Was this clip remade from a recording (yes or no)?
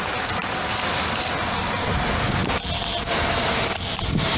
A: no